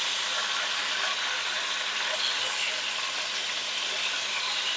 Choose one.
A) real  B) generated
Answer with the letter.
A